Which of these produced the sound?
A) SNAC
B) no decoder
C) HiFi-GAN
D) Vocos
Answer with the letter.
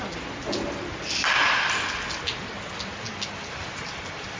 B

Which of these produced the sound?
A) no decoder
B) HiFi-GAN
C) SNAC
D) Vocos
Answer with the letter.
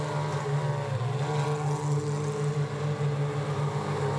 A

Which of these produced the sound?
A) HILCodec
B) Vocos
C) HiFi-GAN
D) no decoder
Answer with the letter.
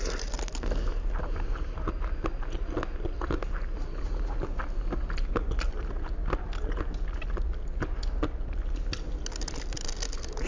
D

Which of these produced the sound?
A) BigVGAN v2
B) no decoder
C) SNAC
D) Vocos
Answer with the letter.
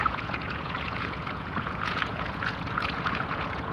D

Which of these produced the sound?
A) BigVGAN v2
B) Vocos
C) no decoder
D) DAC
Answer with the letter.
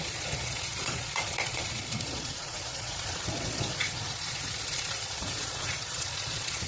B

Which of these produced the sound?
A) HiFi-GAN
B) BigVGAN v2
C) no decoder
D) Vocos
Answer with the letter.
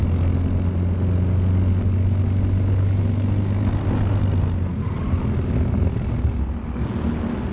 C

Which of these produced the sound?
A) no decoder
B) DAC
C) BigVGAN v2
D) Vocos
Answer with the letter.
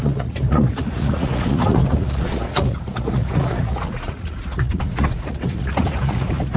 D